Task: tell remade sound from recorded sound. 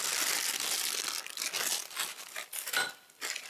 recorded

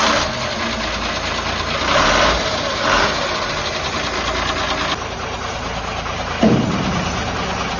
recorded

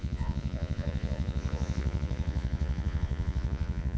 remade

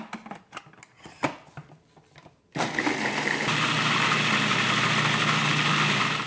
recorded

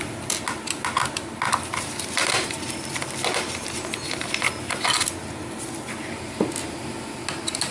recorded